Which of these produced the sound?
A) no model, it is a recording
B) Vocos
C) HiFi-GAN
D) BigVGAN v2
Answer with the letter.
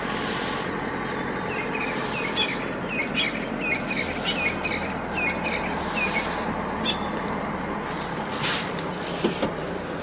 A